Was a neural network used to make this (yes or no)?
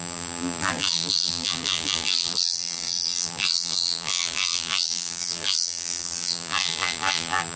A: yes